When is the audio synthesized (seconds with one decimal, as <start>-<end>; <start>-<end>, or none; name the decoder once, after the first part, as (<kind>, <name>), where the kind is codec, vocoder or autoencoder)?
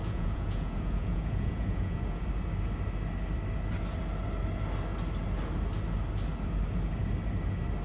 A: 0.0-2.2 (vocoder, Vocos)